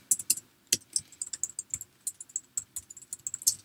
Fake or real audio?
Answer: real